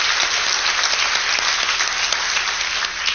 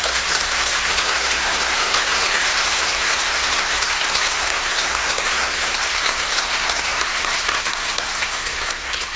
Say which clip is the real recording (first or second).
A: first